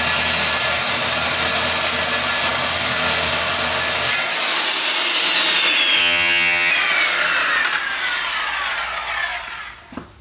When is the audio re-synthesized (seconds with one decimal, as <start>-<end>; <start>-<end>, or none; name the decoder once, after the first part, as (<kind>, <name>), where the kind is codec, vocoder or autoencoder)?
6.0-6.7 (vocoder, HiFi-GAN)